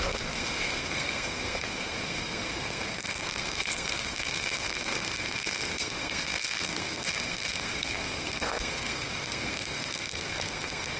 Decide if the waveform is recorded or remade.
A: remade